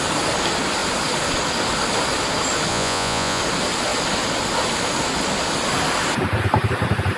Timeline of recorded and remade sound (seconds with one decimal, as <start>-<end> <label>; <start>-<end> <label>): 0.0-2.7 recorded; 2.7-3.4 remade; 3.4-7.2 recorded

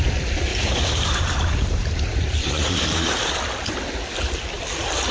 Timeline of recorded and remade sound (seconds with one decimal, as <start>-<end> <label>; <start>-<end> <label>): 0.0-0.5 recorded; 0.5-3.2 remade; 3.2-5.1 recorded

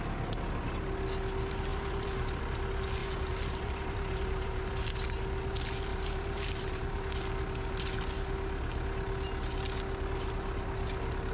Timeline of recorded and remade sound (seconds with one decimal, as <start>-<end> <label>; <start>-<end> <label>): 0.0-1.7 recorded; 1.7-2.4 remade; 2.4-3.0 recorded; 3.0-4.7 remade; 4.7-5.9 recorded; 5.9-7.0 remade; 7.0-11.3 recorded

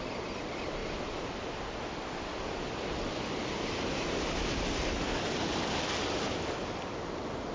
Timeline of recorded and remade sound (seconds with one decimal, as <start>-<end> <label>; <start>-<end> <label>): 0.0-7.5 recorded